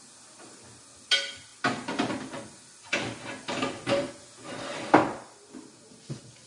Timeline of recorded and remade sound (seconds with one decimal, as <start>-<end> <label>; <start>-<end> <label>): 0.0-6.5 recorded